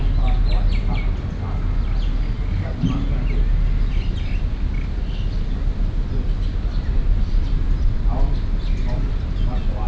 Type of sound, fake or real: real